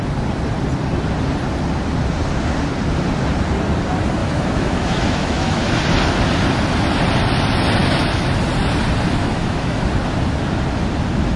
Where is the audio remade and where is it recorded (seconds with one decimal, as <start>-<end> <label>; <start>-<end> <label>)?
0.0-4.2 recorded; 4.2-5.8 remade; 5.8-7.8 recorded; 7.8-8.4 remade; 8.4-9.2 recorded; 9.2-9.8 remade; 9.8-11.4 recorded